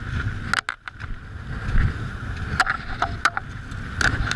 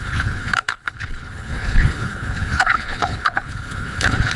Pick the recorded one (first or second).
first